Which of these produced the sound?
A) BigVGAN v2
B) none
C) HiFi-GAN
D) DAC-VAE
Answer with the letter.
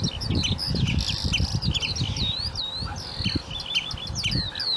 B